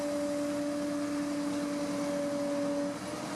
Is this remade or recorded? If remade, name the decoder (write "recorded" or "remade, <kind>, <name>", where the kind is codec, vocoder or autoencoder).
recorded